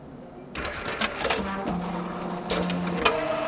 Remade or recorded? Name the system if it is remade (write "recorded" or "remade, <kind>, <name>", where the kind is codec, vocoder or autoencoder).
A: recorded